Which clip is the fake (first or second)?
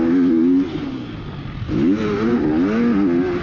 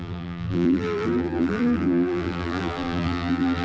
second